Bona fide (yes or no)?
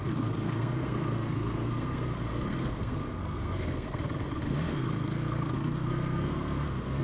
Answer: no